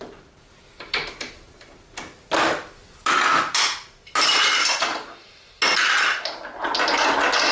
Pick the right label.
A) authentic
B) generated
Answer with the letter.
A